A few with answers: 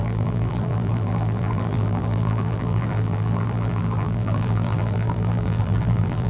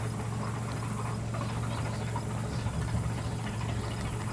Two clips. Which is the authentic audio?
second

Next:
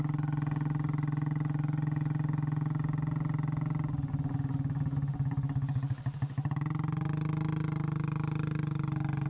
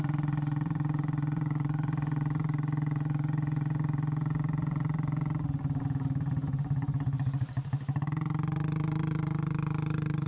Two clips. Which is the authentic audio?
first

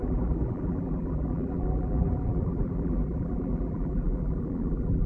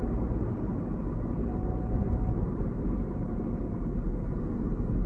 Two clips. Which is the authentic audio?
second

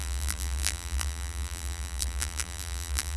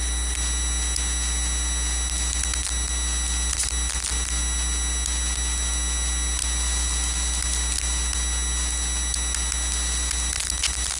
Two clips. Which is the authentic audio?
second